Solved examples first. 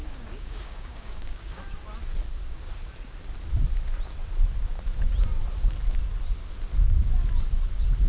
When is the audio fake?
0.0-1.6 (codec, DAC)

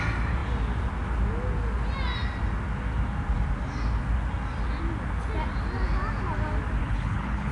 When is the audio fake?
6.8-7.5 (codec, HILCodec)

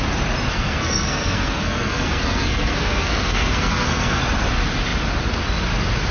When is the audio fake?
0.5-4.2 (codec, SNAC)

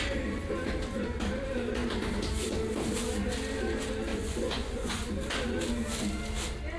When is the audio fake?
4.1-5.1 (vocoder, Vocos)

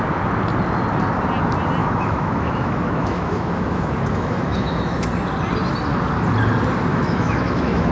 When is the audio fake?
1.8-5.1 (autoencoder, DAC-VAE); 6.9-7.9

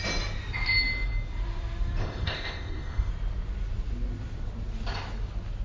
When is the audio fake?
2.0-3.1 (codec, ZipCodec)

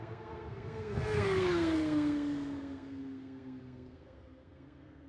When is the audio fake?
0.0-5.1 (codec, SNAC)